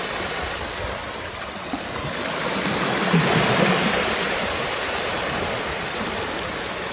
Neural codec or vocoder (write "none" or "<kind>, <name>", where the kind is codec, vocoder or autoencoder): none